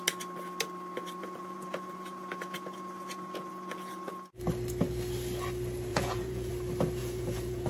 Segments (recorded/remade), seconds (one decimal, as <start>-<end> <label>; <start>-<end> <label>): 0.0-1.2 recorded; 1.2-4.4 remade; 4.4-5.9 recorded; 5.9-6.5 remade; 6.5-7.0 recorded; 7.0-7.7 remade